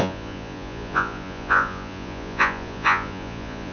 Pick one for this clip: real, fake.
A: fake